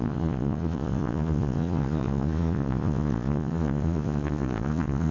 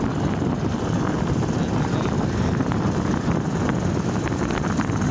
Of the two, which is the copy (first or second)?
first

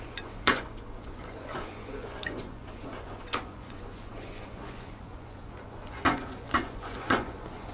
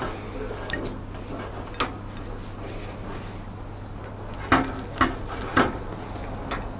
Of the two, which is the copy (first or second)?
first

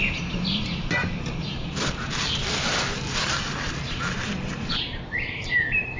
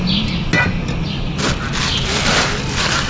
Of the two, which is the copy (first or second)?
first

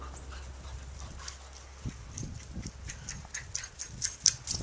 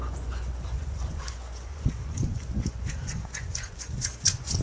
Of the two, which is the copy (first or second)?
second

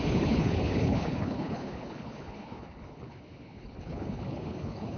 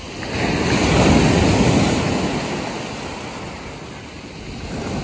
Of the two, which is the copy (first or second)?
first